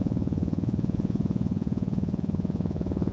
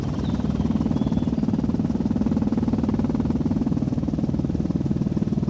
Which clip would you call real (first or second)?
second